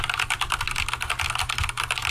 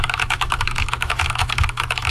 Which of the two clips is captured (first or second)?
first